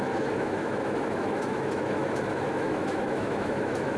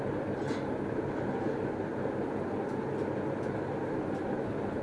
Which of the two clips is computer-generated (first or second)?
first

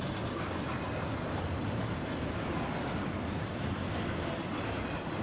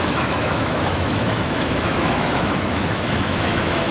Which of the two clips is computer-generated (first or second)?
second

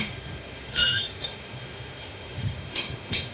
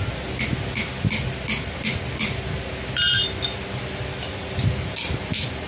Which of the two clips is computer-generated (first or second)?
first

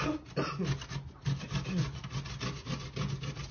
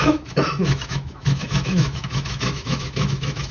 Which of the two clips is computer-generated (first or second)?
second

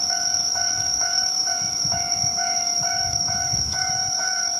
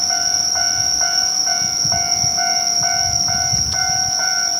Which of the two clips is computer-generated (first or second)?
first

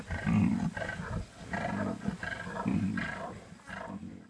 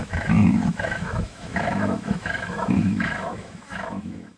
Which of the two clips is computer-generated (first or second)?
second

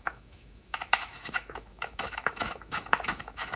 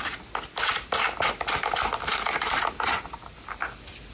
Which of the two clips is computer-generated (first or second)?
first